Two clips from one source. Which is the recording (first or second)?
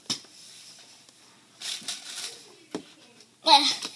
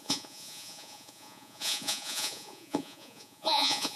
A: first